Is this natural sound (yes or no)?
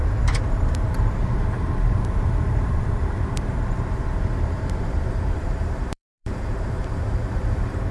no